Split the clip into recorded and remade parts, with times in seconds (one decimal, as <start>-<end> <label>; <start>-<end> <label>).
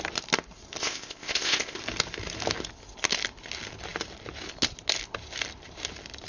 0.0-0.8 recorded; 0.8-1.8 remade; 1.8-6.3 recorded